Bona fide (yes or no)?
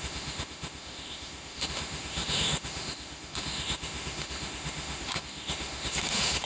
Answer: no